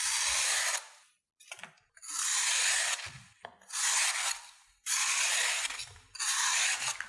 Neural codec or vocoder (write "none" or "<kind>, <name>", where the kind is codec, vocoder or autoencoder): none